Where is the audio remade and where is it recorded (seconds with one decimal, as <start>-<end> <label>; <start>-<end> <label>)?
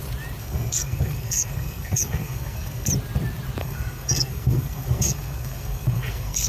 0.0-0.4 recorded; 0.4-2.9 remade; 2.9-3.6 recorded; 3.6-6.5 remade